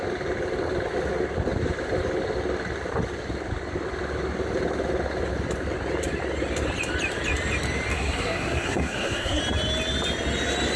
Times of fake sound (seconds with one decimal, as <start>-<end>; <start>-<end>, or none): 7.9-9.4